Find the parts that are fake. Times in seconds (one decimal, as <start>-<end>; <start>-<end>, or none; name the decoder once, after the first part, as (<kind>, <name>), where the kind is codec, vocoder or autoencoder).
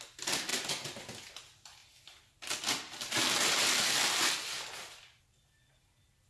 none